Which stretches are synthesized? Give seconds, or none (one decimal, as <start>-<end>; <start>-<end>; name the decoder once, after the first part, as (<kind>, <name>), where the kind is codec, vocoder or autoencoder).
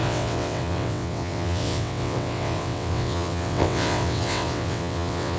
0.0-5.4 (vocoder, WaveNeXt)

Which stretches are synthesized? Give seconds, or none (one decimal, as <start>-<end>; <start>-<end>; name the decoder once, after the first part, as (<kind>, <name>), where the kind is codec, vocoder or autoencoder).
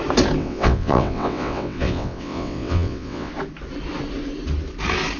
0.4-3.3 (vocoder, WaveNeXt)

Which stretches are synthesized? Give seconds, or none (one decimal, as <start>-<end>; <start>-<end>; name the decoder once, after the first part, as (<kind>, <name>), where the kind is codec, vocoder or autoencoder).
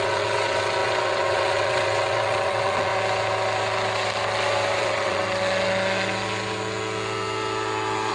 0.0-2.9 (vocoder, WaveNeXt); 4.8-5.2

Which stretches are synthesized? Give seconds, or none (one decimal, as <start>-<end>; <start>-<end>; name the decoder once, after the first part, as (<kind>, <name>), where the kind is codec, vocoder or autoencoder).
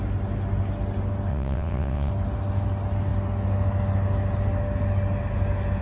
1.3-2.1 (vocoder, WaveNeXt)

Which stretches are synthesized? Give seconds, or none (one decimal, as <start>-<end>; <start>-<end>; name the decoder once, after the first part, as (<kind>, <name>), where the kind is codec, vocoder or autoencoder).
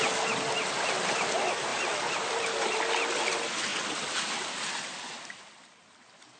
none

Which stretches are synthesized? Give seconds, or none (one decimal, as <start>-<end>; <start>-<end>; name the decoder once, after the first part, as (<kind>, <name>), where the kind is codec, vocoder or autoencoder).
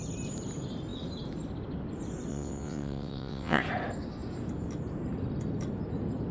2.3-3.6 (vocoder, WaveNeXt)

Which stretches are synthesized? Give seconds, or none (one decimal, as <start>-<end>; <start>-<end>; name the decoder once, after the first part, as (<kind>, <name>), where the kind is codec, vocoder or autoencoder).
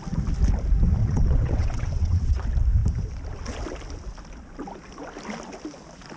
1.0-2.4 (vocoder, WaveNeXt)